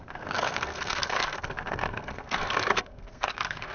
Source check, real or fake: fake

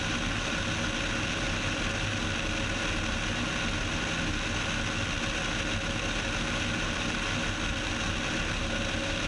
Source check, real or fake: real